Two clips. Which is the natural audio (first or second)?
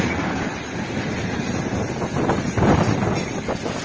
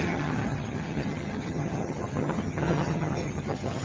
first